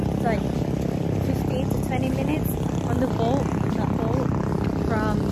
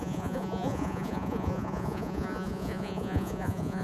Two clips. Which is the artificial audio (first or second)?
second